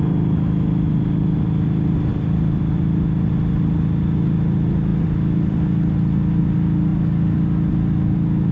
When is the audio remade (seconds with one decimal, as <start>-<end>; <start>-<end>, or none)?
none